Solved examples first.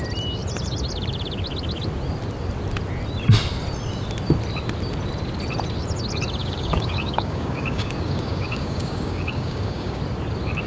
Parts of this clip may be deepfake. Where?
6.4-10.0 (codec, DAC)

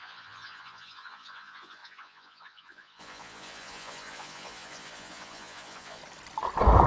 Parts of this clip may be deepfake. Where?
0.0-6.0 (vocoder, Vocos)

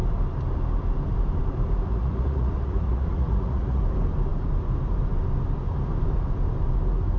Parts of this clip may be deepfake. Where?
1.9-3.8 (vocoder, Vocos)

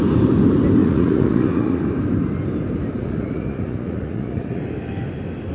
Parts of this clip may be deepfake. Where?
0.8-1.8 (vocoder, Vocos); 3.0-4.6